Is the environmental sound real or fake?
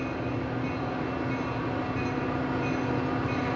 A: real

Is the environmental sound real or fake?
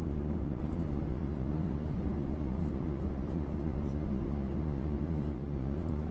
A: fake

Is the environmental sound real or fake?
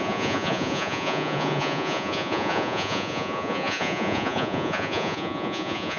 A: fake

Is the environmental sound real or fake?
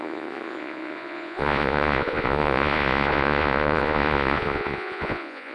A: fake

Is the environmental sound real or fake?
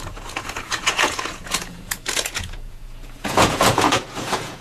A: fake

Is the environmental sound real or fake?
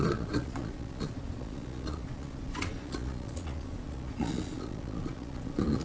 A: fake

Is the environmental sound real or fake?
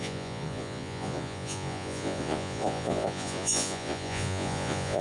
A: fake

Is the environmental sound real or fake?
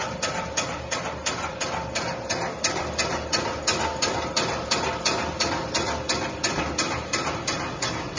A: real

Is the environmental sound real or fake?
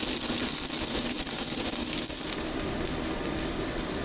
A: real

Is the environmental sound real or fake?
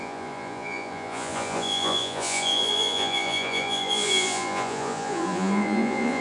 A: fake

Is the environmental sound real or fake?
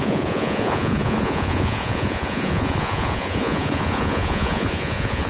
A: fake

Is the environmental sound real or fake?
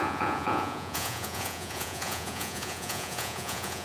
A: fake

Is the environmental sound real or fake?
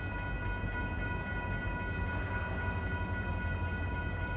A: real